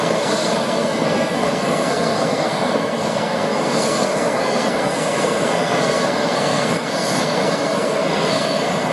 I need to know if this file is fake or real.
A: fake